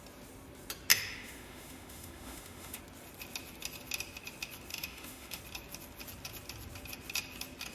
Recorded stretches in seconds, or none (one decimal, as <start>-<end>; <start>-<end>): 0.0-0.9; 2.8-4.7; 5.4-7.7